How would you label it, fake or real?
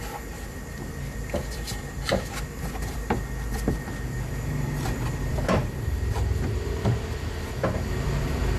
fake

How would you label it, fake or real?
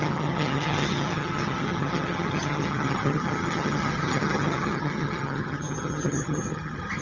fake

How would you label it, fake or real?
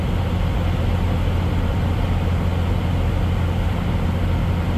real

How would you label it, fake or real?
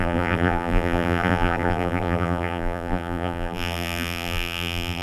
fake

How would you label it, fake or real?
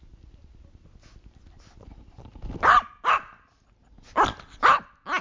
real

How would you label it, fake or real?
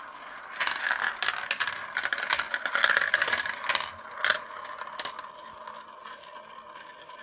real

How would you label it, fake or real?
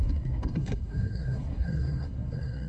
fake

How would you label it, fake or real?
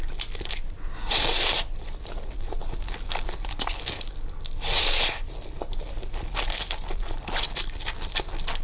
real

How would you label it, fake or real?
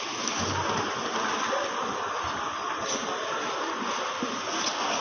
real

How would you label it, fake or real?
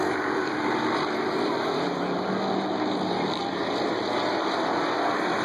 fake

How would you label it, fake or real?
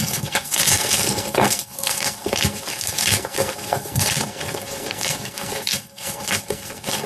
fake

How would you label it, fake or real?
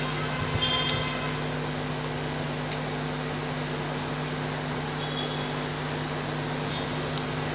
real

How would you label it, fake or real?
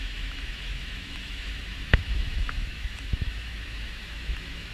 fake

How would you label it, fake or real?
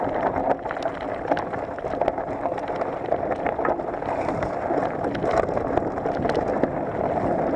real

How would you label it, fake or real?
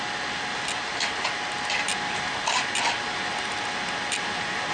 real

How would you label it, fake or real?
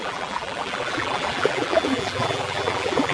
fake